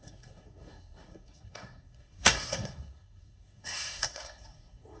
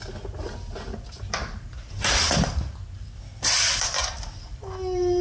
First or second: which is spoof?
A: first